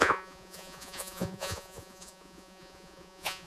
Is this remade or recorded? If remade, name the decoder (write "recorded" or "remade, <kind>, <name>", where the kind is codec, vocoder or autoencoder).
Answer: remade, vocoder, Vocos